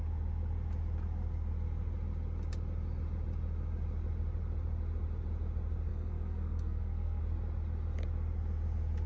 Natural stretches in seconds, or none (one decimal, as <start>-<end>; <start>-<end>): 0.0-5.9; 7.2-9.1